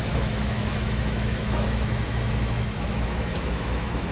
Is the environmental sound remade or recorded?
remade